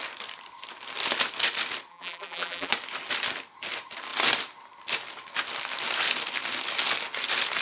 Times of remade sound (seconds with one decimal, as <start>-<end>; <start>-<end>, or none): 1.9-2.7

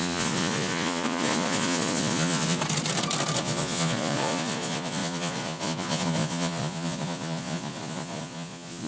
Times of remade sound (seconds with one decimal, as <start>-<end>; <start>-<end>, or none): 0.0-2.6; 3.4-8.9

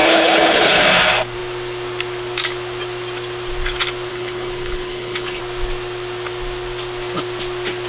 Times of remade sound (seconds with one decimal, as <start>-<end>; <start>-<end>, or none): 0.0-0.8; 4.1-5.4

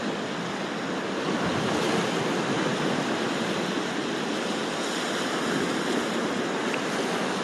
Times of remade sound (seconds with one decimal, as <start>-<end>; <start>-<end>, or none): none